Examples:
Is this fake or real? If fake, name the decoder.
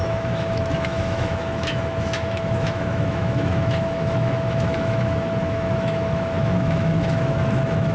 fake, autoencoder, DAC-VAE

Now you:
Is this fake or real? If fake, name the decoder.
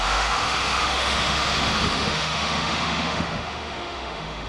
fake, autoencoder, DAC-VAE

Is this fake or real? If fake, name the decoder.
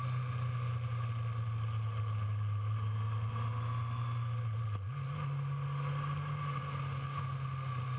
real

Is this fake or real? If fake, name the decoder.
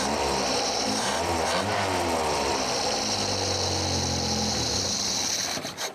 real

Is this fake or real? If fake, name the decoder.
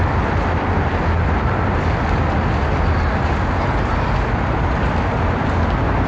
real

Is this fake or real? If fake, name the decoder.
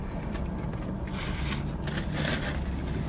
real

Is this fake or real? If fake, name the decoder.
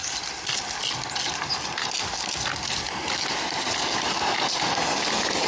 real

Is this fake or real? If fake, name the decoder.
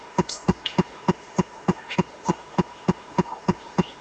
fake, autoencoder, DAC-VAE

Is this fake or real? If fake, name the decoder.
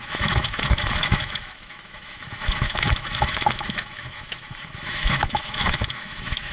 fake, autoencoder, DAC-VAE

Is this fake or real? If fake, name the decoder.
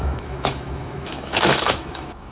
fake, autoencoder, DAC-VAE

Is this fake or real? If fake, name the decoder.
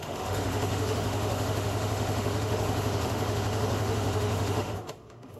fake, autoencoder, DAC-VAE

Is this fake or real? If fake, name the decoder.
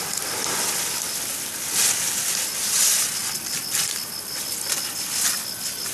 real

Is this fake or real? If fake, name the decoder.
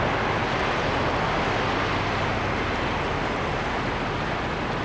real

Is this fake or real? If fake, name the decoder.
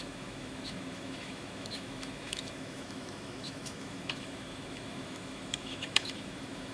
fake, autoencoder, DAC-VAE